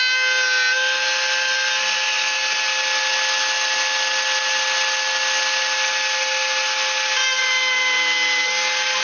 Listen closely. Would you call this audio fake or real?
real